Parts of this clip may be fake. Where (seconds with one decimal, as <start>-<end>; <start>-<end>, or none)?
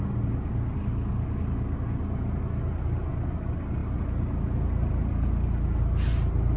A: none